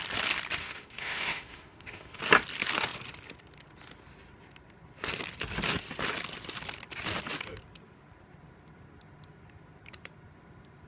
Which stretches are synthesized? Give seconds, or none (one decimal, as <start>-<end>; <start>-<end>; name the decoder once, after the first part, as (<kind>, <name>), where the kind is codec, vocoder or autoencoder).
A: 0.6-2.2 (autoencoder, DAC-VAE)